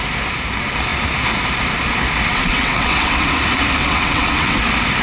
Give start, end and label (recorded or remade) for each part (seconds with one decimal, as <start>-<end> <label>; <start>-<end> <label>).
0.0-2.3 recorded; 2.3-3.4 remade; 3.4-3.8 recorded; 3.8-4.6 remade; 4.6-5.0 recorded